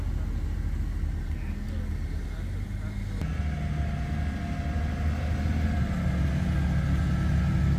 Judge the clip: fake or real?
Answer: real